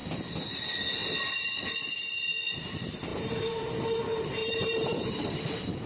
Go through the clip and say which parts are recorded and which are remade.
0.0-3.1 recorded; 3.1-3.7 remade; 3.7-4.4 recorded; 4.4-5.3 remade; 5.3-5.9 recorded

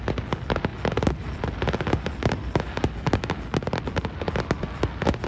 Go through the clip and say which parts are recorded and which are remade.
0.0-5.3 recorded

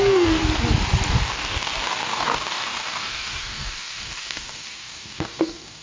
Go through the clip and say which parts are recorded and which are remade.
0.0-0.4 remade; 0.4-1.1 recorded; 1.1-5.8 remade

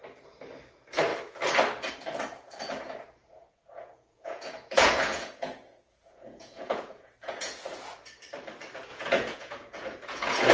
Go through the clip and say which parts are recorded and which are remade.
0.0-3.2 recorded; 3.2-7.9 remade; 7.9-8.9 recorded; 8.9-10.5 remade

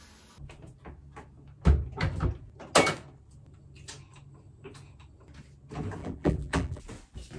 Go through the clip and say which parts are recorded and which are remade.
0.0-6.0 recorded; 6.0-6.8 remade; 6.8-7.4 recorded

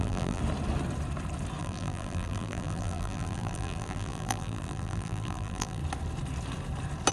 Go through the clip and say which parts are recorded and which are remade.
0.0-0.4 remade; 0.4-1.6 recorded; 1.6-5.8 remade; 5.8-7.1 recorded

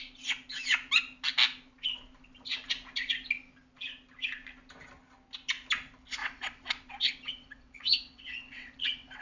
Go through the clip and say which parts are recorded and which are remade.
0.0-6.2 recorded; 6.2-9.2 remade